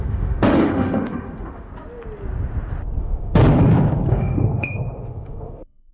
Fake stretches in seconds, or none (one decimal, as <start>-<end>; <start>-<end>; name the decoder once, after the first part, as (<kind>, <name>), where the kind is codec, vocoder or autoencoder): 0.0-1.7 (autoencoder, DAC-VAE); 3.0-3.4; 4.1-5.9